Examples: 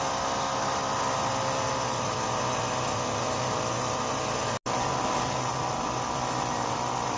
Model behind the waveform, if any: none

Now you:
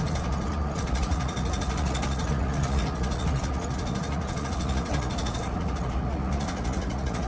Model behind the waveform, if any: vocoder, Vocos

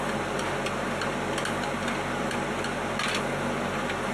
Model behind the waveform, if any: none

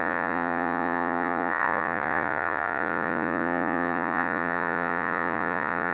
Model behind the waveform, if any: vocoder, Vocos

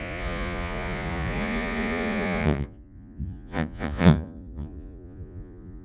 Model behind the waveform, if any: vocoder, Vocos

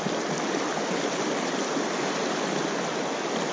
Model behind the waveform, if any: none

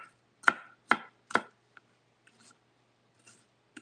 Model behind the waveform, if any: none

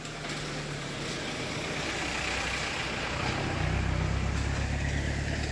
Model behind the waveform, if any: none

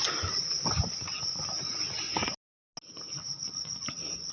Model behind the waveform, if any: none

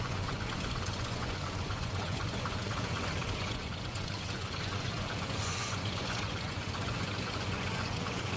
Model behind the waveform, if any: vocoder, Vocos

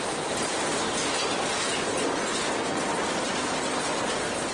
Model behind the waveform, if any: none